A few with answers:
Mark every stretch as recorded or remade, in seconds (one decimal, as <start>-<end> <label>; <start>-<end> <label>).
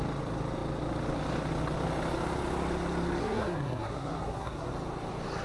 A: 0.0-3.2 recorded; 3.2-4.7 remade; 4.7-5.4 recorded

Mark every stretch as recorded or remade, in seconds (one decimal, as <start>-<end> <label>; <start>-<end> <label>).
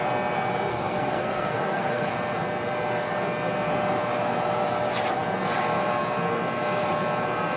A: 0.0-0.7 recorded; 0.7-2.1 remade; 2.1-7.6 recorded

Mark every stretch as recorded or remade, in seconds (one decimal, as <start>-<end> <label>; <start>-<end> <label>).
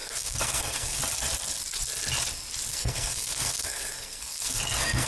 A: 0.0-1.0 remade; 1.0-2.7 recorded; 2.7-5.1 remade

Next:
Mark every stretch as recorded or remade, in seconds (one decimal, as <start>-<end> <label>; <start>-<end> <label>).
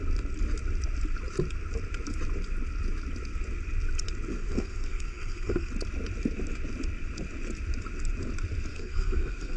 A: 0.0-4.3 recorded; 4.3-5.7 remade; 5.7-8.7 recorded; 8.7-9.6 remade